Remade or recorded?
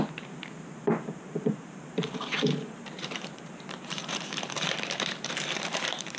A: remade